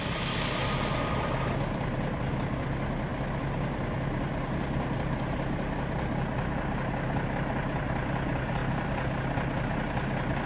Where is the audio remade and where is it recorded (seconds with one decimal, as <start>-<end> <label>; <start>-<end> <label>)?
0.0-10.5 recorded